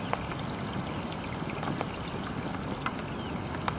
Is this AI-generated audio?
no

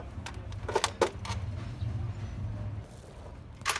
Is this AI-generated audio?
no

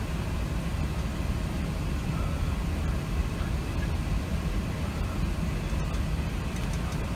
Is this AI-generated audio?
no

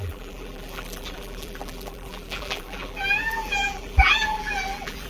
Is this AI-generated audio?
yes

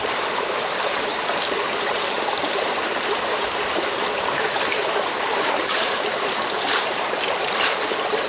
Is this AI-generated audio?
yes